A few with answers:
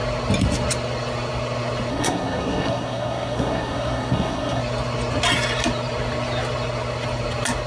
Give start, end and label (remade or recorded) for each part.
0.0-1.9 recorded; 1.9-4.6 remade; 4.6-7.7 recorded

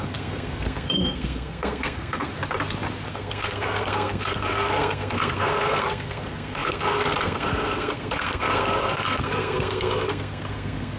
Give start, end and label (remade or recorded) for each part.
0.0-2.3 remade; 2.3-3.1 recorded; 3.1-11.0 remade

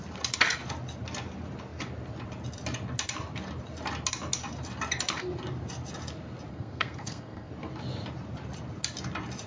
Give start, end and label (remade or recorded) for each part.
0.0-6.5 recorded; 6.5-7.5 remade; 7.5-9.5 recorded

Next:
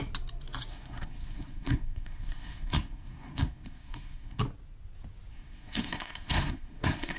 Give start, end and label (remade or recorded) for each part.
0.0-0.7 recorded; 0.7-4.4 remade; 4.4-5.3 recorded; 5.3-7.2 remade

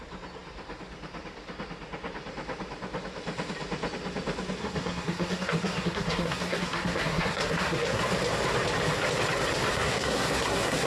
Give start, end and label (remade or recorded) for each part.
0.0-4.6 recorded; 4.6-8.0 remade; 8.0-9.7 recorded; 9.7-10.9 remade

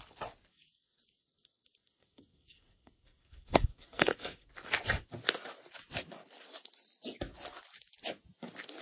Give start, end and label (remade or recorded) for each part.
0.0-0.5 recorded; 0.5-4.5 remade; 4.5-8.8 recorded

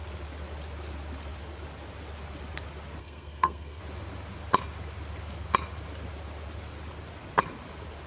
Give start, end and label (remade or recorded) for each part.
0.0-3.0 recorded; 3.0-3.8 remade; 3.8-8.1 recorded

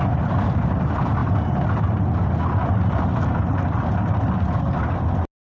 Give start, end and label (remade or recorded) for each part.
0.0-5.5 recorded